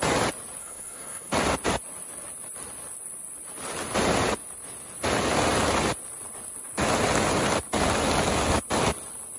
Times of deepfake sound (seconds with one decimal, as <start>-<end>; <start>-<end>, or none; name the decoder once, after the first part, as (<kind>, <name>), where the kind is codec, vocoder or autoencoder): 0.6-1.3 (codec, SNAC)